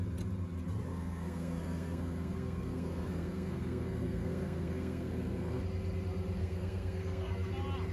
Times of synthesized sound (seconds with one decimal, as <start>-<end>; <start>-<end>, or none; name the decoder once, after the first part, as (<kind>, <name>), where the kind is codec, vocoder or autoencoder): 0.9-5.6 (codec, SNAC); 6.4-7.5